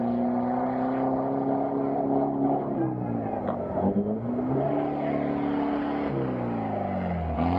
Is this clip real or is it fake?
real